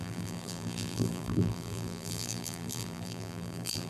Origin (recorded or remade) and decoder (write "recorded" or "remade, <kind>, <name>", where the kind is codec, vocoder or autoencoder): remade, vocoder, BigVGAN v2